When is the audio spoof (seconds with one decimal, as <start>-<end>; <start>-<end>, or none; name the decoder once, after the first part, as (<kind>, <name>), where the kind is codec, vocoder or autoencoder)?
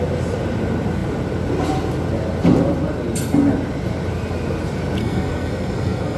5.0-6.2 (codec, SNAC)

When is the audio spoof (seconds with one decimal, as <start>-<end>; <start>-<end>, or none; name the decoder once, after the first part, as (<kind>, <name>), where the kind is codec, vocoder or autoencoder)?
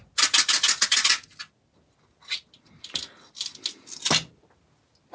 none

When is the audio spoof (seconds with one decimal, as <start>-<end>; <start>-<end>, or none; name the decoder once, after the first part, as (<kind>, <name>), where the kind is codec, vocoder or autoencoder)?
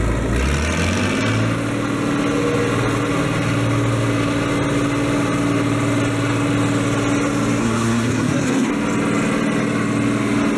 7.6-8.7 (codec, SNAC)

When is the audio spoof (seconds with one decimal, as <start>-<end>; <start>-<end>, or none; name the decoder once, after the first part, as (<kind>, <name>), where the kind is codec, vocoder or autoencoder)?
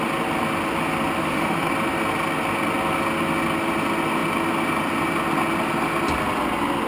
1.2-1.7 (autoencoder, DAC-VAE)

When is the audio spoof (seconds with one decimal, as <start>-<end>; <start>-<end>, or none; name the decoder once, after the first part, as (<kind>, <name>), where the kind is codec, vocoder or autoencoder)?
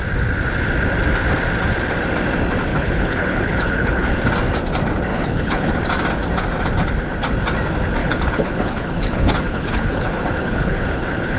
2.7-4.1 (codec, HILCodec); 5.1-5.7; 8.0-11.4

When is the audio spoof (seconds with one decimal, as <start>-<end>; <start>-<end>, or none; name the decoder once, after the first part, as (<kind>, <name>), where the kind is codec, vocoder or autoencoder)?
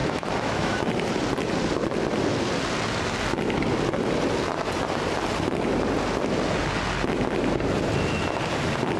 0.0-0.8 (autoencoder, DAC-VAE)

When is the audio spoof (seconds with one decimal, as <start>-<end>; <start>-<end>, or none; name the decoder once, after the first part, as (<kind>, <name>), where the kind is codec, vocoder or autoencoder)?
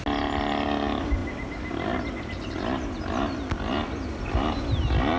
none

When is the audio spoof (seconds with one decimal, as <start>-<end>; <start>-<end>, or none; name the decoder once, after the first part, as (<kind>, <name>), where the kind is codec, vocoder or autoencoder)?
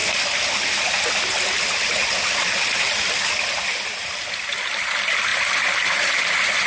none